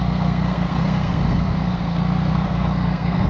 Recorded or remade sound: remade